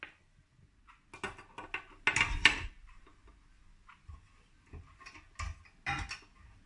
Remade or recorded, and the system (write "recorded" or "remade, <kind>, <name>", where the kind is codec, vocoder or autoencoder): recorded